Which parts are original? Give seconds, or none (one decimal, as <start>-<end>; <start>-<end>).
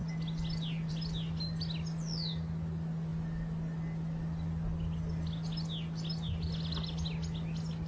0.0-7.9